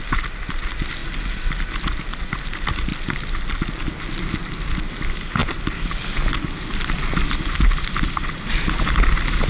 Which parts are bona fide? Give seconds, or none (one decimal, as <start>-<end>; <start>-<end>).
0.0-1.0; 1.6-2.9; 3.5-9.5